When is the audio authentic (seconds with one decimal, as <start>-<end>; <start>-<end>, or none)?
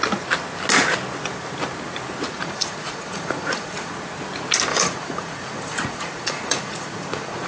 0.0-2.3; 3.9-4.7